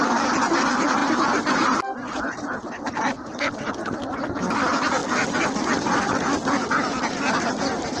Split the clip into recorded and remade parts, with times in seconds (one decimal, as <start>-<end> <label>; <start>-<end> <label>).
0.0-1.0 recorded; 1.0-3.5 remade; 3.5-8.0 recorded

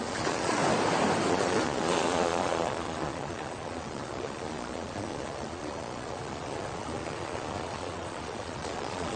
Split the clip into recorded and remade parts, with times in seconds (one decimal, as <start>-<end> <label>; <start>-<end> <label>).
0.0-0.6 remade; 0.6-1.3 recorded; 1.3-9.2 remade

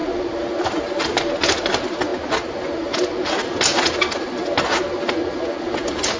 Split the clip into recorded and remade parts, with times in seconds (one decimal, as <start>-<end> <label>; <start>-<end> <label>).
0.0-6.2 recorded

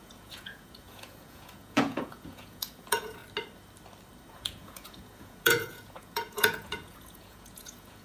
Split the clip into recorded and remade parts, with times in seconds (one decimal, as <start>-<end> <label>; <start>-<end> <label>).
0.0-3.2 remade; 3.2-4.3 recorded; 4.3-8.0 remade